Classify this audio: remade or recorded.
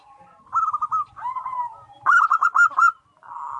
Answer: recorded